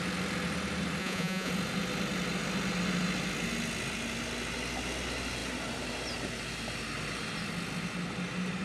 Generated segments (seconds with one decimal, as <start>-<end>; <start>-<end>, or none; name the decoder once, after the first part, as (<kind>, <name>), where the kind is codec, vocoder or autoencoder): 1.0-1.5 (vocoder, Vocos)